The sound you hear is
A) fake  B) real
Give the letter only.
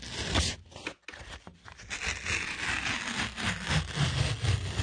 B